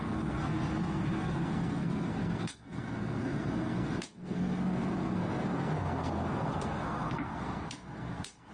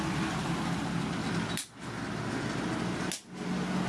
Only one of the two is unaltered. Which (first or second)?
second